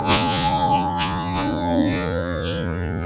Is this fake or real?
fake